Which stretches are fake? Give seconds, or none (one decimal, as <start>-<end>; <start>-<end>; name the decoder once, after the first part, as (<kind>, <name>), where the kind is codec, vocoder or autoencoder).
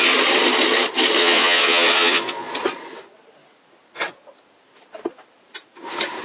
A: 1.2-2.5 (vocoder, Vocos)